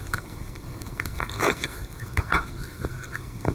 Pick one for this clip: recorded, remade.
remade